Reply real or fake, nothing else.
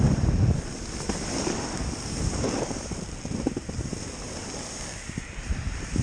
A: real